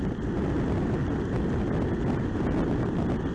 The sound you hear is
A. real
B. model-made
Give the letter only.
A